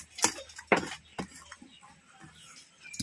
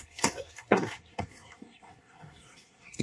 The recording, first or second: first